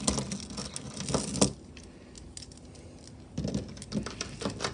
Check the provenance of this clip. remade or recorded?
recorded